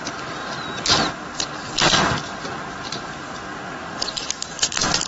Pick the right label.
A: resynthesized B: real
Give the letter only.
B